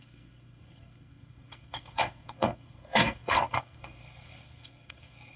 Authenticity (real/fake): fake